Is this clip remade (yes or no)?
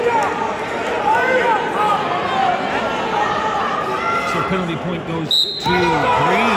no